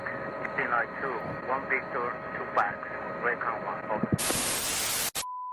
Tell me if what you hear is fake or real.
real